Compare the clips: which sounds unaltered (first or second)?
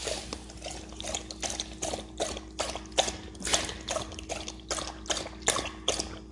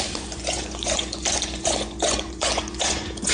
first